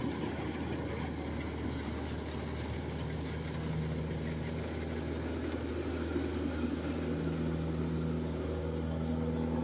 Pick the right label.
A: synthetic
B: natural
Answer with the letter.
B